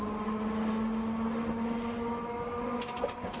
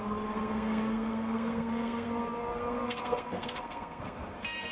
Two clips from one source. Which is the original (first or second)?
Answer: first